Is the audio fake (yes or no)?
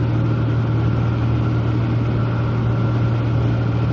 no